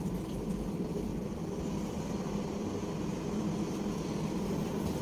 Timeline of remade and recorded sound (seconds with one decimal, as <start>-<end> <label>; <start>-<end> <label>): 0.0-2.6 recorded; 2.6-3.4 remade; 3.4-5.0 recorded